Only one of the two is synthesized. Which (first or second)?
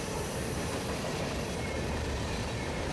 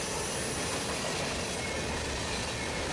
first